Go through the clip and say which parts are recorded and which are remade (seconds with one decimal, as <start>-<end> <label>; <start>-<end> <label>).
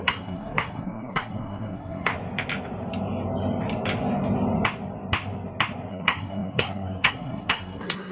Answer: 0.0-2.1 remade; 2.1-5.9 recorded; 5.9-8.1 remade